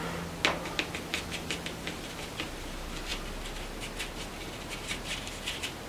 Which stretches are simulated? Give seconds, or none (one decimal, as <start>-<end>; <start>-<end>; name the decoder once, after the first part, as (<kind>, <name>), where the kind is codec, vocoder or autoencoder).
none